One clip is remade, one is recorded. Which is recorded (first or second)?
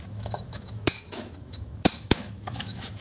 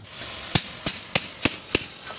second